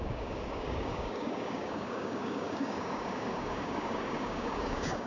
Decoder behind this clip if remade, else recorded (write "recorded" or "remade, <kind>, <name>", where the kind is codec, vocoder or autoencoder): remade, codec, DAC